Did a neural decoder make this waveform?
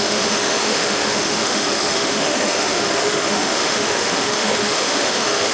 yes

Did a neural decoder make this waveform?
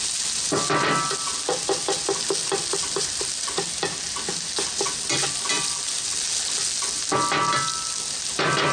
no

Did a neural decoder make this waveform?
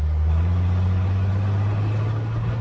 no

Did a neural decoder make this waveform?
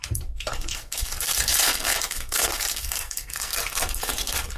yes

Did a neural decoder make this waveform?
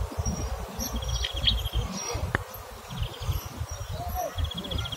no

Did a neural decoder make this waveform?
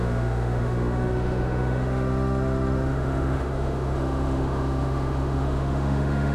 yes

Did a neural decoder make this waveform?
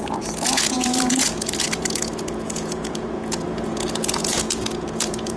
yes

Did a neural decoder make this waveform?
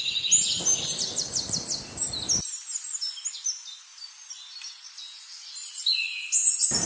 no